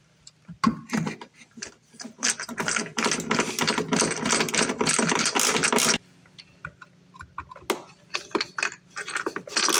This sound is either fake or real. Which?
real